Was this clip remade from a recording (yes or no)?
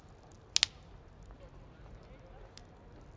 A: no